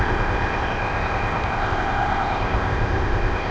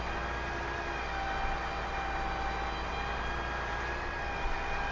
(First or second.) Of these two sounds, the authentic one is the second